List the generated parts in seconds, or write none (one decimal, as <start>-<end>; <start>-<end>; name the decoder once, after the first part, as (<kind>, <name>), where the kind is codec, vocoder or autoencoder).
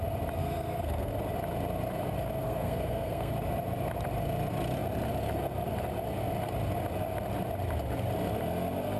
0.4-1.1 (codec, SNAC); 2.4-3.3